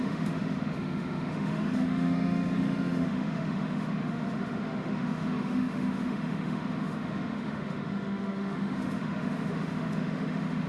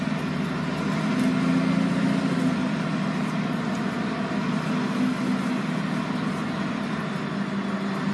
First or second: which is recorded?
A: second